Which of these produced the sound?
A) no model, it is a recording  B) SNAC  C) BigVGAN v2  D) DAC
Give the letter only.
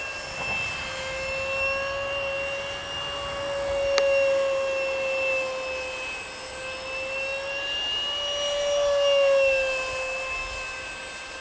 A